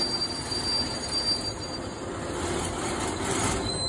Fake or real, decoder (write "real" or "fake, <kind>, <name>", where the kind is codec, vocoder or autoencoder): real